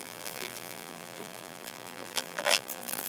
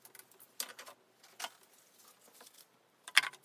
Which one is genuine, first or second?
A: second